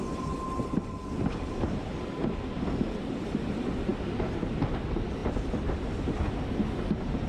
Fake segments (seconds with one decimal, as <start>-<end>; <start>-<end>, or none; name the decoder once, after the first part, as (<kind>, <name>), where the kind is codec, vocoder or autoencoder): none